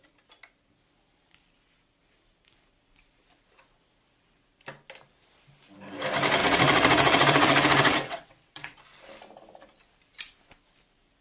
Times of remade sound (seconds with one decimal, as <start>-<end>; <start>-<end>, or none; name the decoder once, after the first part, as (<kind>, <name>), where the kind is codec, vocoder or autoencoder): 6.4-8.8 (vocoder, WaveNeXt)